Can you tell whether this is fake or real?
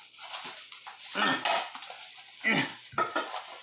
real